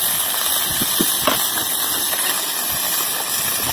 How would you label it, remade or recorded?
recorded